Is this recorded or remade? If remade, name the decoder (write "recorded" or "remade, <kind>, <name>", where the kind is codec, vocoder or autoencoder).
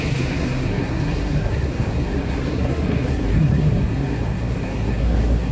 remade, codec, SNAC